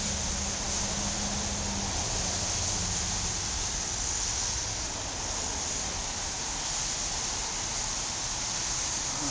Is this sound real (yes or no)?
yes